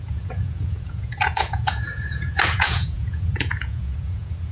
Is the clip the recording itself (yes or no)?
no